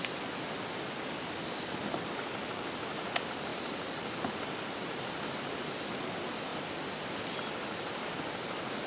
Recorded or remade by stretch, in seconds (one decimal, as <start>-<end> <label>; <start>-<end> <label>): 0.0-8.9 recorded